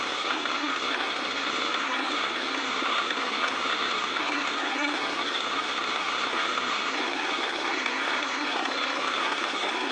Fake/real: fake